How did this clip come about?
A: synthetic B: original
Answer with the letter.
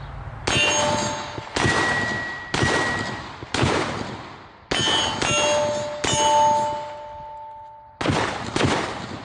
B